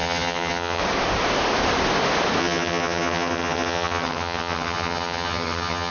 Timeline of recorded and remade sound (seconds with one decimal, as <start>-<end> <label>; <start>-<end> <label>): 0.0-0.8 remade; 0.8-2.4 recorded; 2.4-5.9 remade

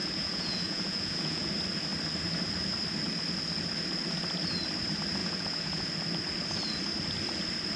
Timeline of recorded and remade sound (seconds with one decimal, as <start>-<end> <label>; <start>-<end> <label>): 0.0-1.5 remade; 1.5-5.2 recorded; 5.2-5.9 remade; 5.9-7.8 recorded

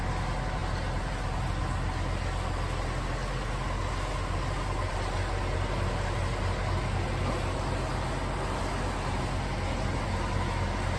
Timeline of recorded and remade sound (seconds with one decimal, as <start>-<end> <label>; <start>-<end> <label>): 0.0-11.0 recorded

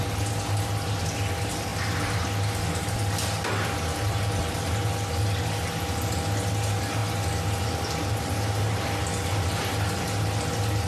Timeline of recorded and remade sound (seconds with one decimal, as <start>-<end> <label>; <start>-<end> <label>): 0.0-10.9 recorded

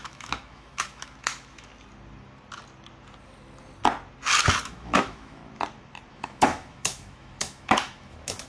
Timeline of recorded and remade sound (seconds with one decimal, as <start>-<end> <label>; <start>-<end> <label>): 0.0-1.7 remade; 1.7-4.6 recorded; 4.6-5.4 remade; 5.4-6.1 recorded; 6.1-8.5 remade

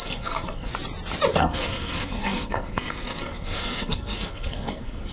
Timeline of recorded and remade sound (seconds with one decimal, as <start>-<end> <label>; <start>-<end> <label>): 0.0-0.7 remade; 0.7-1.3 recorded; 1.3-5.1 remade

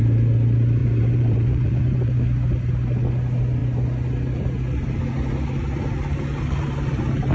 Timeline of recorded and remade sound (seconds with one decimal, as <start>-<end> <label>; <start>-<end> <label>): 0.0-0.8 recorded; 0.8-2.1 remade; 2.1-7.3 recorded

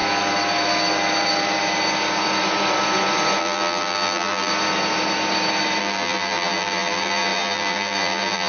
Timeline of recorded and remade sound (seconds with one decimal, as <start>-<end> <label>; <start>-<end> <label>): 0.0-3.4 recorded; 3.4-4.5 remade; 4.5-5.8 recorded; 5.8-8.5 remade